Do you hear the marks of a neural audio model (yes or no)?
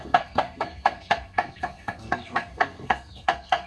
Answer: yes